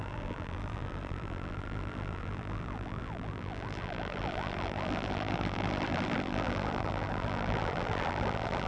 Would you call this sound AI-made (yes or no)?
yes